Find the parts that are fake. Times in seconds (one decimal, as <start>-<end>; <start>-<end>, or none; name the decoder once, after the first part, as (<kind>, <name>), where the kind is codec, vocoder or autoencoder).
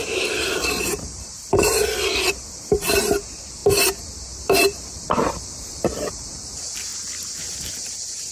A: 0.0-1.7 (vocoder, BigVGAN v2); 2.7-6.9; 7.6-8.3